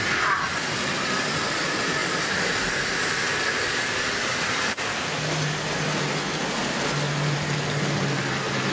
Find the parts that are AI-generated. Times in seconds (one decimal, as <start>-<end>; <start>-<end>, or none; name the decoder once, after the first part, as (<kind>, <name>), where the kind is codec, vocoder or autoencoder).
none